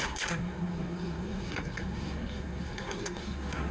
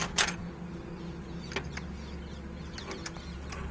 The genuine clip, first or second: second